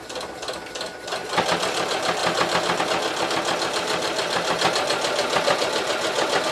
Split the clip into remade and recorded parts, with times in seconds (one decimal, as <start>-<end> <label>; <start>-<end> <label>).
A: 0.0-6.5 recorded